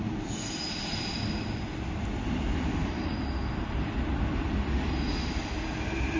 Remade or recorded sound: recorded